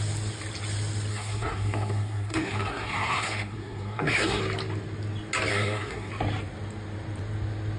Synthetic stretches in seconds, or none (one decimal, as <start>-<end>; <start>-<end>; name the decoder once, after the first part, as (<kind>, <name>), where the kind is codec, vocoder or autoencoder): 1.1-4.4 (codec, SNAC); 5.5-6.1